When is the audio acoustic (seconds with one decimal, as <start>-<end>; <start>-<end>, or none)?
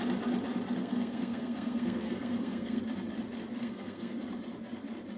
0.0-0.8; 2.8-3.6; 4.2-5.2